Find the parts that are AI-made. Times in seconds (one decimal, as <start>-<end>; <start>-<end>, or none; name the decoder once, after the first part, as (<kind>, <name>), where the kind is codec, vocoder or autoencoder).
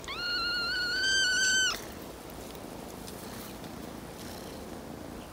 none